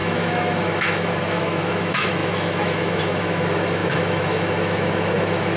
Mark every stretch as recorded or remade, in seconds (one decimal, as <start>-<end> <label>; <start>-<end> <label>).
0.0-5.6 remade

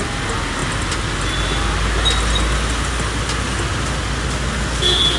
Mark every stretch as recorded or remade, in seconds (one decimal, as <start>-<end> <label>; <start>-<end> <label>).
0.0-5.2 recorded

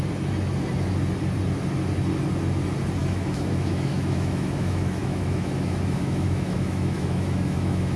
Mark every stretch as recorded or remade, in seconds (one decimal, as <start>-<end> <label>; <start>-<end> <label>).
0.0-3.0 recorded; 3.0-8.0 remade